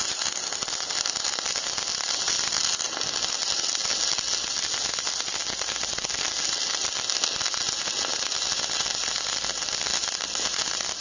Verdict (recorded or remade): recorded